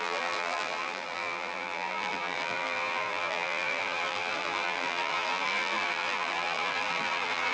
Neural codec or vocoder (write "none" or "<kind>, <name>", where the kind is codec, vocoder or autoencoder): vocoder, BigVGAN v2